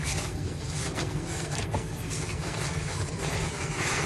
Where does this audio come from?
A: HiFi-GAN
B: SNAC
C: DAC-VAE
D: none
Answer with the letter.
B